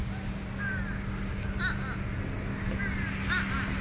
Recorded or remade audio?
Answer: recorded